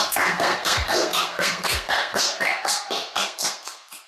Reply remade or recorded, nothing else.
remade